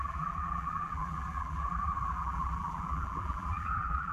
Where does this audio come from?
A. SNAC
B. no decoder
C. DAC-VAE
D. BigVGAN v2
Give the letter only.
D